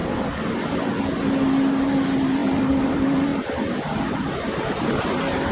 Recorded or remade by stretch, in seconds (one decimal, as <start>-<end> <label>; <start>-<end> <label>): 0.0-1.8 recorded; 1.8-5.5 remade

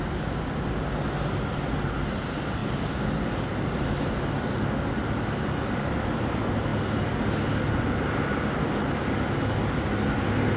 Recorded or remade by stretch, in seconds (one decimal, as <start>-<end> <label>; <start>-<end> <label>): 0.0-10.6 recorded

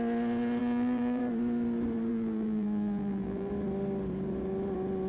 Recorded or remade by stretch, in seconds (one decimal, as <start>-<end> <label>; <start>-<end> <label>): 0.0-0.6 recorded; 0.6-1.2 remade; 1.2-2.1 recorded; 2.1-3.5 remade; 3.5-5.1 recorded

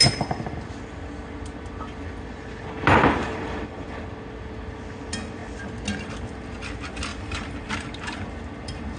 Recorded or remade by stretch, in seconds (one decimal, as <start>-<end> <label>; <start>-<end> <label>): 0.0-3.2 recorded; 3.2-4.0 remade; 4.0-7.1 recorded; 7.1-7.7 remade; 7.7-9.0 recorded

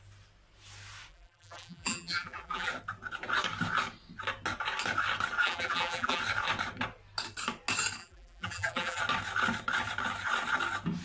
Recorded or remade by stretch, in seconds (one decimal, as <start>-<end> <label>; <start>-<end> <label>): 0.0-1.1 recorded; 1.1-2.7 remade; 2.7-5.4 recorded; 5.4-6.2 remade; 6.2-8.0 recorded; 8.0-9.0 remade; 9.0-11.0 recorded